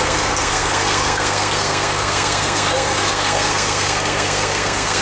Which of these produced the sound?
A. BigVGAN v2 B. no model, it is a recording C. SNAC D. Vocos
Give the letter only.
C